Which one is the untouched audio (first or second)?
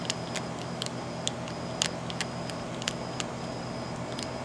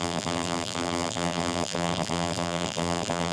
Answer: first